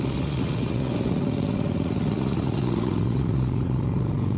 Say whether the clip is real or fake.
fake